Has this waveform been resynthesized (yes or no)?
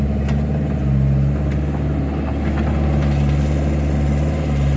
no